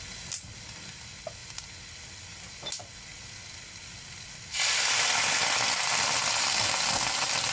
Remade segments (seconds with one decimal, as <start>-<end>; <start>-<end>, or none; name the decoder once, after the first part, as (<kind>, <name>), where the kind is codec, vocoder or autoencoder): none